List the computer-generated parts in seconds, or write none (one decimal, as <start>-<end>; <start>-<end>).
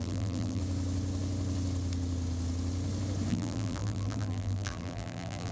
0.0-0.6; 3.3-5.5